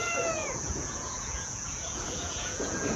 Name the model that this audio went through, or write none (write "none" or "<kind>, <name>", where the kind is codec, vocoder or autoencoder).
vocoder, Vocos